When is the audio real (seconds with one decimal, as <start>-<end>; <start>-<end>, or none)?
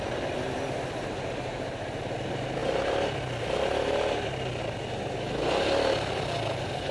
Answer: 0.0-6.9